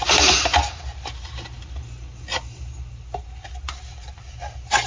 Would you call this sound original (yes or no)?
yes